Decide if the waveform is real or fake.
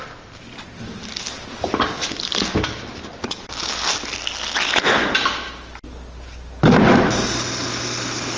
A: real